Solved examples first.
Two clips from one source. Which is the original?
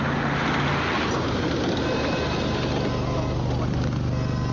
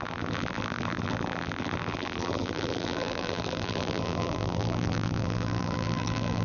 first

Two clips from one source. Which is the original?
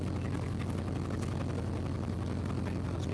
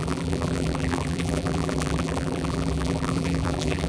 first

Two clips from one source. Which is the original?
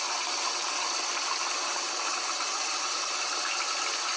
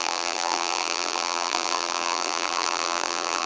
first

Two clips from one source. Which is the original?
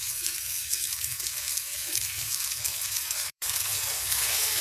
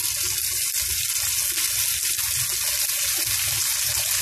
second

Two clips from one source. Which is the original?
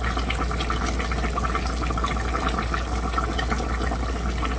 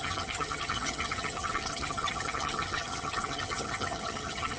first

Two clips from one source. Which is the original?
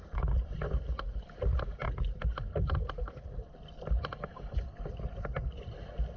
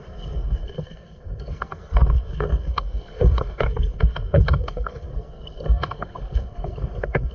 first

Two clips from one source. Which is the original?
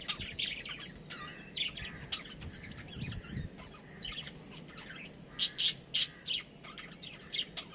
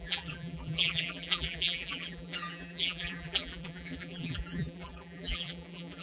first